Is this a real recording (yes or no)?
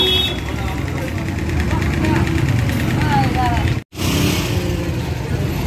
yes